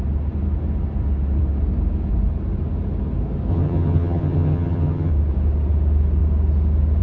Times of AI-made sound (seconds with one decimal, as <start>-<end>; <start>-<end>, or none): 3.5-5.1